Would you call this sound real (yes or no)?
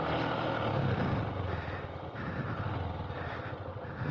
yes